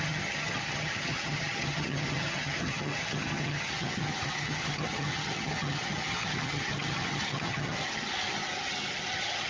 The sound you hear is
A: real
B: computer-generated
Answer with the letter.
B